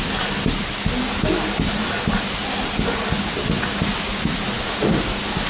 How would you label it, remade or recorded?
recorded